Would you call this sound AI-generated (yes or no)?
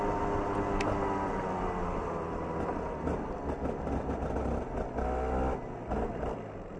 no